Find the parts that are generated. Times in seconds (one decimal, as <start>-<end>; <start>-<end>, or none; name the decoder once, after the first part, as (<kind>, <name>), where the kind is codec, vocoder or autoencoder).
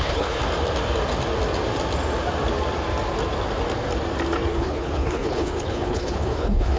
0.0-0.4 (codec, HILCodec); 4.5-6.8